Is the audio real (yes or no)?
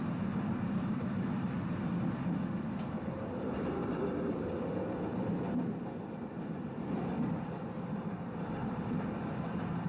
yes